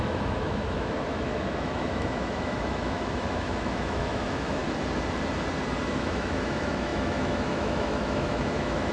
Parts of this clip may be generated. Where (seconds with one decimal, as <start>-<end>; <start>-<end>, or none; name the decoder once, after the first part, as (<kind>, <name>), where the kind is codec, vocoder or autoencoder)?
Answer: 0.0-4.6 (autoencoder, DAC-VAE); 5.9-8.9